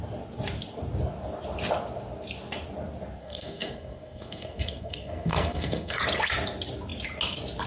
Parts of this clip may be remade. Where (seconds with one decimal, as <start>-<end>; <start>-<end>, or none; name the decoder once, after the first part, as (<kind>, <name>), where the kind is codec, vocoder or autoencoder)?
3.2-6.0 (codec, SNAC)